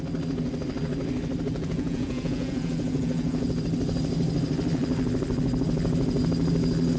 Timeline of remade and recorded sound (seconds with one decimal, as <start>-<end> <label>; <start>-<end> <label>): 0.0-1.5 recorded; 1.5-3.6 remade; 3.6-7.0 recorded